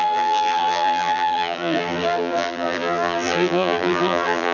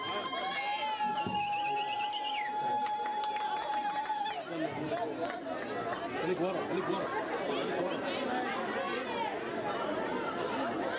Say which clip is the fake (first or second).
first